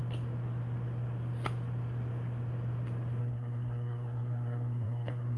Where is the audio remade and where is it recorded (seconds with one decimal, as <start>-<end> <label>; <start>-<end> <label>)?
0.0-3.2 recorded; 3.2-5.4 remade